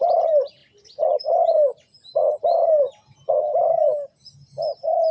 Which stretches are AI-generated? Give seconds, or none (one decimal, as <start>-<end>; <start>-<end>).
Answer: 0.0-0.6; 3.3-5.1